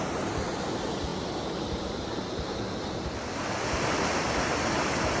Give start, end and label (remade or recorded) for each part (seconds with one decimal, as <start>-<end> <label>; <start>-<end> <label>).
0.0-5.2 recorded